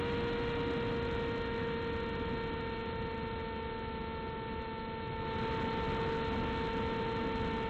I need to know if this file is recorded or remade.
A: recorded